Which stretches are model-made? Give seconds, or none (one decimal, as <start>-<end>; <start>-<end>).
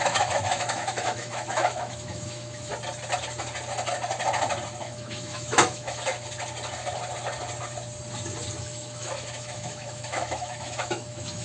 0.0-2.7; 4.8-6.1; 8.6-11.4